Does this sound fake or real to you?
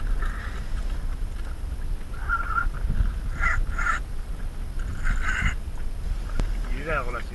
real